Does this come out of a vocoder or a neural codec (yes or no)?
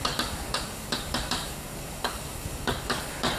yes